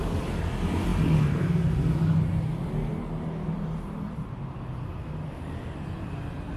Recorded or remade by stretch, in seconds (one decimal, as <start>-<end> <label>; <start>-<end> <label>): 0.0-6.6 recorded